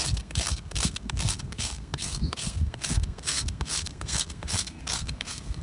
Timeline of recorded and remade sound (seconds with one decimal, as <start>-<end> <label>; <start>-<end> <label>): 0.0-5.6 remade